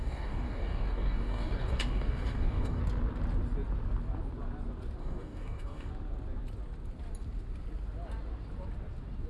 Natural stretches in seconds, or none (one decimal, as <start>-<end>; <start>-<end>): 2.8-5.0; 5.9-9.3